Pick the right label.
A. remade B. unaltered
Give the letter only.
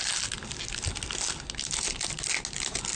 B